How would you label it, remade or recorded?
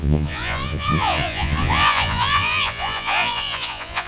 remade